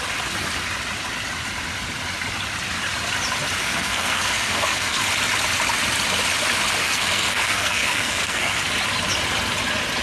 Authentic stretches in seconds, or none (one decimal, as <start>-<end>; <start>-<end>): 0.0-3.6; 5.0-6.8; 8.6-10.0

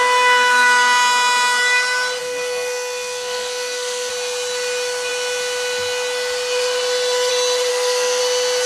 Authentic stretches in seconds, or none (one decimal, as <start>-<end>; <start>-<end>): 0.0-2.2; 4.1-7.7; 8.2-8.7

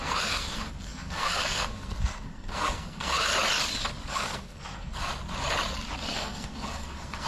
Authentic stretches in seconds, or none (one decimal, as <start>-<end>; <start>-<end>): 3.3-4.1; 5.1-6.0

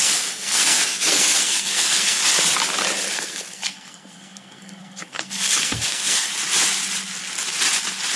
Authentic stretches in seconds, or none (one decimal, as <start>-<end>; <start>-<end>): 2.2-3.1; 6.3-8.2

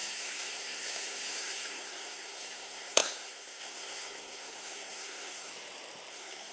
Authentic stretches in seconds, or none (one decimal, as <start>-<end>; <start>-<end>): 5.5-6.1

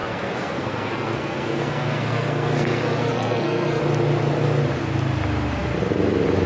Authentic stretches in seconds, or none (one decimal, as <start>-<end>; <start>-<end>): 3.8-6.5

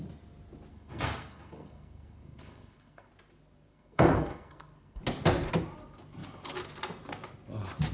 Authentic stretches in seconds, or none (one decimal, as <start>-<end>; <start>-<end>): 0.0-0.7; 3.1-3.7; 5.0-7.9